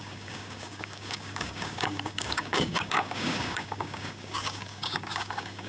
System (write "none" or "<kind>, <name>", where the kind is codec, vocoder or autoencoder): codec, DAC